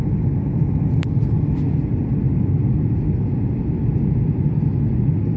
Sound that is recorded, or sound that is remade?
recorded